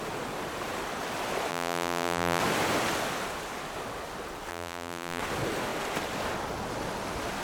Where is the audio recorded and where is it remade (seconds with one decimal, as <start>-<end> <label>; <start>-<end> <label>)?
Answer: 0.0-1.5 recorded; 1.5-2.4 remade; 2.4-4.5 recorded; 4.5-5.2 remade; 5.2-7.4 recorded